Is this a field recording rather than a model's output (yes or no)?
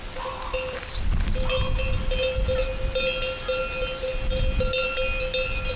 yes